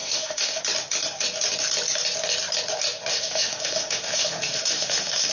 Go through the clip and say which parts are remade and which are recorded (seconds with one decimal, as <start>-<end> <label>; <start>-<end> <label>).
0.0-0.6 remade; 0.6-3.1 recorded; 3.1-5.3 remade